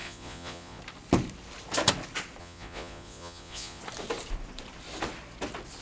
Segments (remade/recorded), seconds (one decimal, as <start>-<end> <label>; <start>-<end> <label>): 0.0-0.8 remade; 0.8-2.4 recorded; 2.4-3.8 remade; 3.8-5.8 recorded